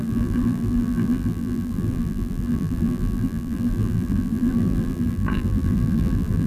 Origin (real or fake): fake